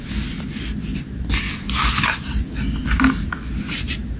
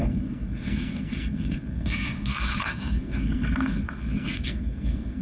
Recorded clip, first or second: first